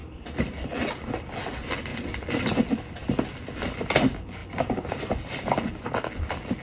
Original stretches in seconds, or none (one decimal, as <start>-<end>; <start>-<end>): 0.0-6.6